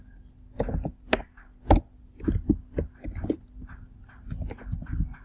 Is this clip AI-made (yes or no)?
no